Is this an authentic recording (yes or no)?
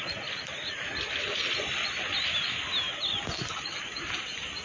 yes